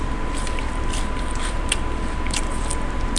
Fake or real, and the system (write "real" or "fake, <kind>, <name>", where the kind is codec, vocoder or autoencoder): fake, vocoder, BigVGAN v2